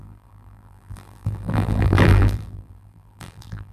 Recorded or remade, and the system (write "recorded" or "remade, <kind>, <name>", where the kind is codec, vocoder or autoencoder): remade, vocoder, BigVGAN v2